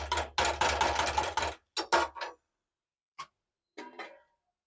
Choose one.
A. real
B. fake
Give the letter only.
A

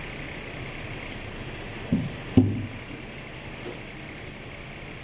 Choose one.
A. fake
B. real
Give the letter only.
B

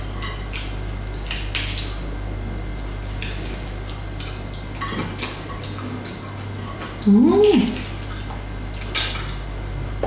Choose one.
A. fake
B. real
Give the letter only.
B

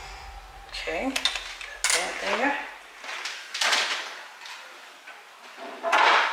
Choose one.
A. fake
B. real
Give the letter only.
B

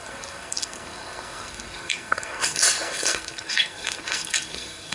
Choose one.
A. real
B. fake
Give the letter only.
B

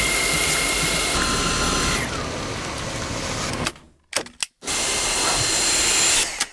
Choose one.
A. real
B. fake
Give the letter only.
A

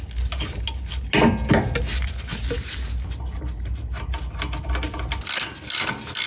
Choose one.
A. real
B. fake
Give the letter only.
A